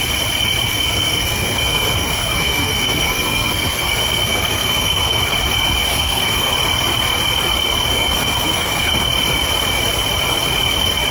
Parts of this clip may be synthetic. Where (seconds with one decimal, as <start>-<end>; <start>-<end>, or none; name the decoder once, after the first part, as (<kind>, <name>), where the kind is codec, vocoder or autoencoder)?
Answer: 0.7-5.2 (codec, SNAC); 5.9-6.5; 7.9-8.9